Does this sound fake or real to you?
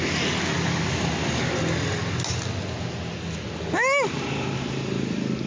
real